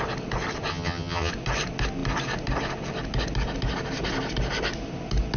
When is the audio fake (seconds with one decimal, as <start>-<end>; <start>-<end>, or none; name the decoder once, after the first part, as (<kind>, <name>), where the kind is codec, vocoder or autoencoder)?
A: 0.7-1.3 (vocoder, HiFi-GAN)